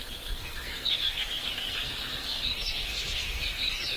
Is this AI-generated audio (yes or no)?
yes